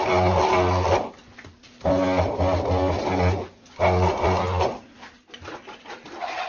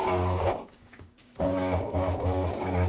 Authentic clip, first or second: first